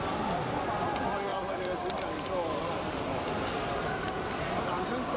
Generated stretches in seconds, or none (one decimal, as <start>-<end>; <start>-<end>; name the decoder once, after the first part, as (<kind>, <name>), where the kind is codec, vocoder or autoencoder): none